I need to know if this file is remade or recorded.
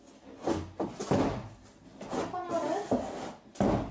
recorded